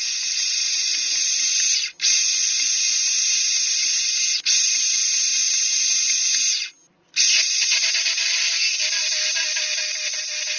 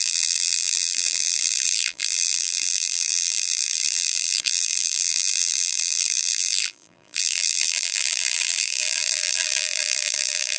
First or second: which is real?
first